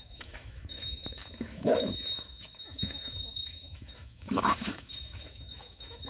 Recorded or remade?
remade